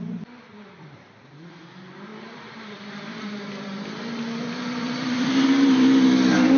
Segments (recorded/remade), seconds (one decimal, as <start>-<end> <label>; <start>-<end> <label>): 0.0-6.6 remade